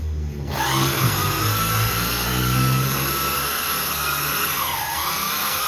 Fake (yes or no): yes